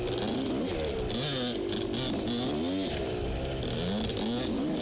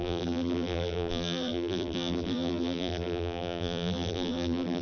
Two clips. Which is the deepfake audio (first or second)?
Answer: second